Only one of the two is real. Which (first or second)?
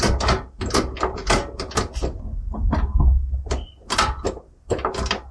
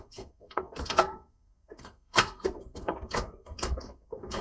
first